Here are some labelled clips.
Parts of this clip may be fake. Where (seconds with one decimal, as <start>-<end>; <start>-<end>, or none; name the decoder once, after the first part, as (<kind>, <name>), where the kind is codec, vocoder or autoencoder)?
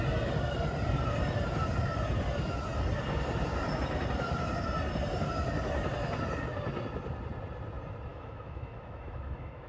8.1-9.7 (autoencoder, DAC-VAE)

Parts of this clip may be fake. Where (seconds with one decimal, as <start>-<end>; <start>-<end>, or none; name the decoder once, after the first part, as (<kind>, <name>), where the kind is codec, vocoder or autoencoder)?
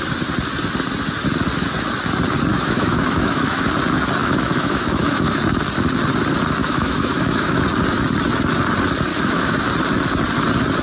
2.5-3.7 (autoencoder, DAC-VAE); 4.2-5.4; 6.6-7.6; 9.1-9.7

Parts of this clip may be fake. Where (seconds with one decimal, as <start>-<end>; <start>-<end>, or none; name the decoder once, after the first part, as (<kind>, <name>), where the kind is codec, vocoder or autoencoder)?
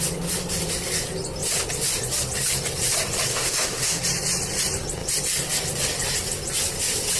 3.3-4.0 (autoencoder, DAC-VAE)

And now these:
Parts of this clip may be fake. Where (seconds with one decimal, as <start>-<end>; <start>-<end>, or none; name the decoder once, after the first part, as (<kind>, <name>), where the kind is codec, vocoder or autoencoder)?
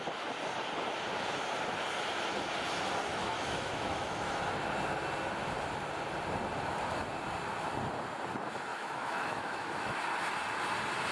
3.1-4.4 (autoencoder, DAC-VAE); 8.7-10.0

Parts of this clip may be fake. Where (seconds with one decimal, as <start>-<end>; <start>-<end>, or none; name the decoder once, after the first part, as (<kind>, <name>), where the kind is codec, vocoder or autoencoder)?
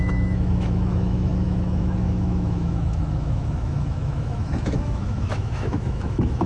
0.0-6.5 (autoencoder, DAC-VAE)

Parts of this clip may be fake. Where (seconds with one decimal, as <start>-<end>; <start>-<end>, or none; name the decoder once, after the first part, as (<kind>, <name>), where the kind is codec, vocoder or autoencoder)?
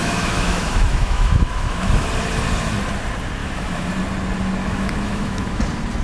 0.0-2.1 (autoencoder, DAC-VAE); 3.4-3.9; 4.6-5.6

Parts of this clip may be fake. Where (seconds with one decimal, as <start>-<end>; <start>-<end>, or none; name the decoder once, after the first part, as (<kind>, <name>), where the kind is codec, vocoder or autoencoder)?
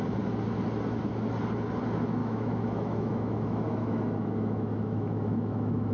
2.2-5.9 (autoencoder, DAC-VAE)